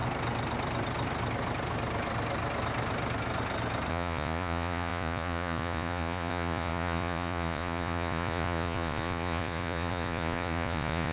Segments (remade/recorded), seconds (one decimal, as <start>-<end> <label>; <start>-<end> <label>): 0.0-3.9 recorded; 3.9-11.1 remade